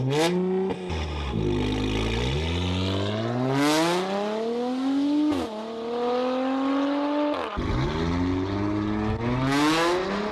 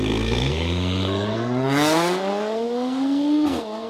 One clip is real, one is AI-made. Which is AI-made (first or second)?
second